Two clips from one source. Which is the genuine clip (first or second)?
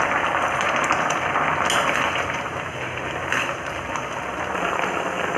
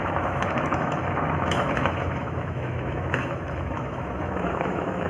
first